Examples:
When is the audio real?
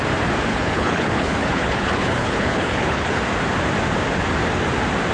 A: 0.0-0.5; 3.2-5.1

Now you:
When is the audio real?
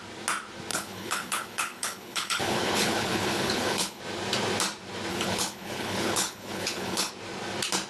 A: 0.0-0.7; 4.0-5.1; 7.1-7.9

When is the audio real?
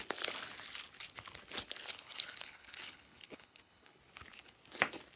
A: 0.0-1.9; 4.0-5.2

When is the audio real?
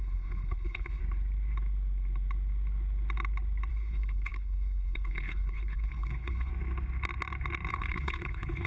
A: 1.0-3.7; 6.5-7.7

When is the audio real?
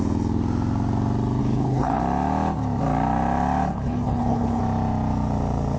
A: 0.0-1.4; 2.0-3.7; 4.6-5.8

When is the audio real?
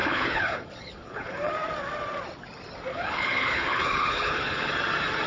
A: 1.5-2.9; 4.7-5.3